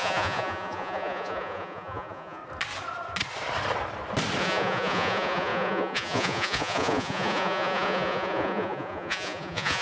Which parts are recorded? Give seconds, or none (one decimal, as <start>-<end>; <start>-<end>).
2.4-4.4